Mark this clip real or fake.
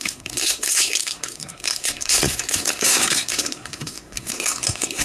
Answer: fake